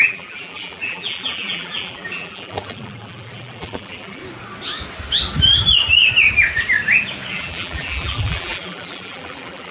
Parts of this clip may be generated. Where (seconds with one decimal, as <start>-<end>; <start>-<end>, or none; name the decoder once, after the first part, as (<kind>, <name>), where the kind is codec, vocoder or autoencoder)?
0.0-4.2 (vocoder, BigVGAN v2); 7.3-9.7